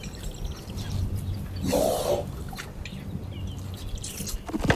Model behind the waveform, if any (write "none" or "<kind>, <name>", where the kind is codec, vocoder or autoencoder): none